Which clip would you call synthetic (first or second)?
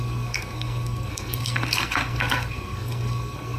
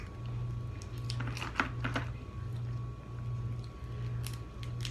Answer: first